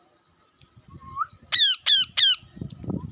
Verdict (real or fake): real